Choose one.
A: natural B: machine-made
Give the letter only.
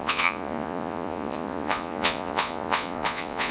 B